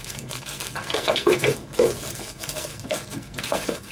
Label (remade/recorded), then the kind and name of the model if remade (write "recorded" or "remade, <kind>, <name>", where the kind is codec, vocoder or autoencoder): remade, codec, SNAC